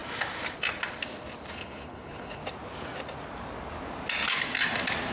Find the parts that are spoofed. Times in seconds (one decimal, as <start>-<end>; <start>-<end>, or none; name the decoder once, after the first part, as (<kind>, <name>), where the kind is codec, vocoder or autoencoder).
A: 1.5-2.4 (codec, HILCodec)